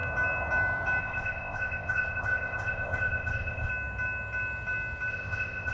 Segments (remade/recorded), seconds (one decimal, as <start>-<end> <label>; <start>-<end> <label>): 0.0-1.0 recorded; 1.0-3.7 remade; 3.7-5.1 recorded; 5.1-5.7 remade